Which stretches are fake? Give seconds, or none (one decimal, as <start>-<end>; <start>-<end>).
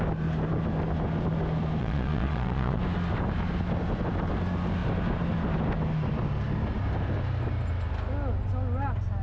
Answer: 1.8-2.8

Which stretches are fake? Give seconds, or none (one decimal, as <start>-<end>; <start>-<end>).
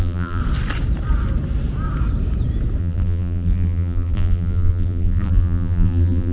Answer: 0.0-0.4; 2.8-6.3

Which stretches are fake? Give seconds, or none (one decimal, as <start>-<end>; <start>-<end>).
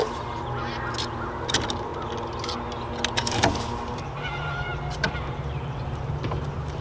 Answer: 1.0-1.9; 3.2-6.8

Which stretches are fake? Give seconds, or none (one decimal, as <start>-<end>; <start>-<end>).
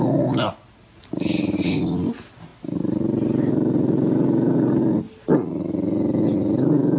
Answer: none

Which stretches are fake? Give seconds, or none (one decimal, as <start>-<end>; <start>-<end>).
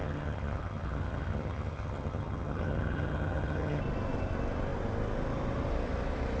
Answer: 0.0-3.8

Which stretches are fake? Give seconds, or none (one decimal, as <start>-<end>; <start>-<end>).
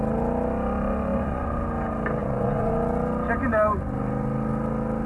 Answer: 1.1-1.6; 2.2-2.7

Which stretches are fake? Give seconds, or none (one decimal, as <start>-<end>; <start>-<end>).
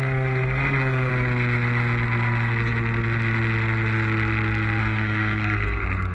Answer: 0.0-1.1; 4.8-6.1